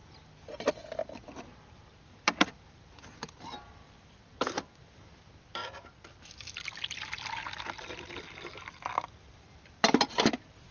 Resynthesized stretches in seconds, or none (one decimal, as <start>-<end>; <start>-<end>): none